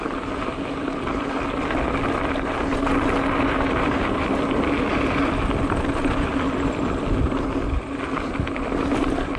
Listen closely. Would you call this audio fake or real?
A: real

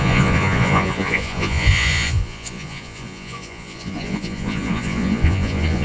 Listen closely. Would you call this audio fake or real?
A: fake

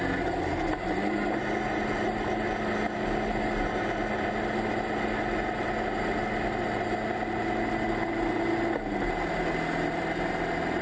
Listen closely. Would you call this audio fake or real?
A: real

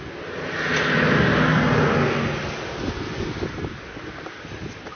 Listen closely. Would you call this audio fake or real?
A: real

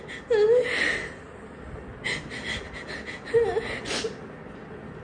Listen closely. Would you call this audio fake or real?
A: real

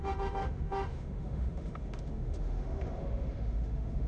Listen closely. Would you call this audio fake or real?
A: fake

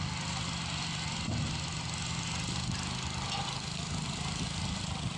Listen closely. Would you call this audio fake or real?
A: real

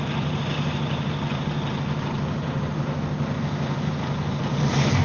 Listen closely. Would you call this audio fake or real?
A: real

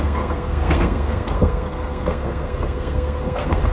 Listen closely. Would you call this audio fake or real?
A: fake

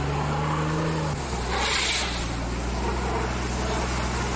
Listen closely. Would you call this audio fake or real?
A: real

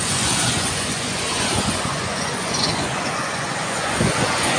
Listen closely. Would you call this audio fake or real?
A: fake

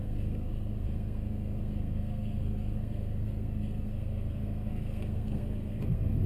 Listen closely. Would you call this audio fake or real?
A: fake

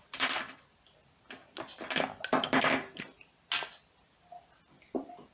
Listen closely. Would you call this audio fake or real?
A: real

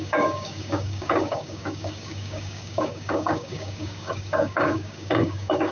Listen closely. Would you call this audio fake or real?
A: fake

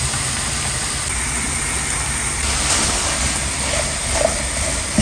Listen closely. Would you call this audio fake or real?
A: real